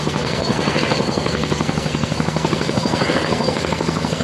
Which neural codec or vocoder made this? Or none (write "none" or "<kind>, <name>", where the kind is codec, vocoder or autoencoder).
codec, SNAC